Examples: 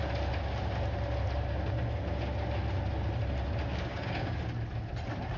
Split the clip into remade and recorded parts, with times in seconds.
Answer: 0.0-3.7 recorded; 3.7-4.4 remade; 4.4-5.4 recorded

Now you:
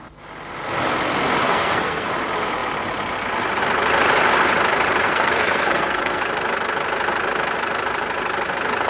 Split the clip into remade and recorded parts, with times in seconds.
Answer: 0.0-1.4 recorded; 1.4-2.1 remade; 2.1-5.0 recorded; 5.0-6.2 remade; 6.2-8.9 recorded

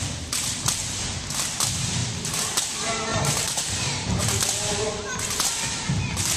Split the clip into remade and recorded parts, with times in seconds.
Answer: 0.0-3.1 recorded; 3.1-4.2 remade; 4.2-6.4 recorded

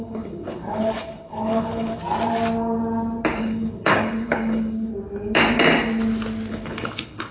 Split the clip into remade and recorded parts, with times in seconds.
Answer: 0.0-2.0 remade; 2.0-3.4 recorded; 3.4-4.9 remade; 4.9-6.5 recorded; 6.5-7.3 remade

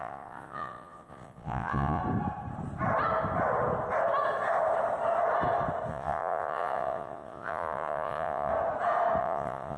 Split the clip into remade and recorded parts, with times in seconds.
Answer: 0.0-2.0 remade; 2.0-5.9 recorded; 5.9-8.5 remade; 8.5-9.2 recorded; 9.2-9.8 remade

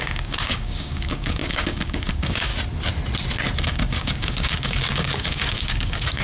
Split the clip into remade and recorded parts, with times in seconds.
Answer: 0.0-2.5 remade; 2.5-3.6 recorded; 3.6-6.2 remade